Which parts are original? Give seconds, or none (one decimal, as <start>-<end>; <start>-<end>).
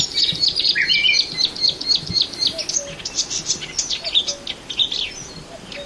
0.0-5.9